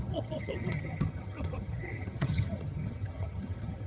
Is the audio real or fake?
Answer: fake